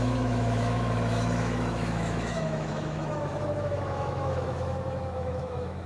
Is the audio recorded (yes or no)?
no